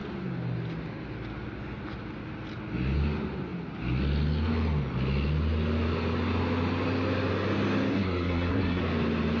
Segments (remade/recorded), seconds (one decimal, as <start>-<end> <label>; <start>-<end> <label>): 0.0-7.9 recorded; 7.9-8.8 remade; 8.8-9.4 recorded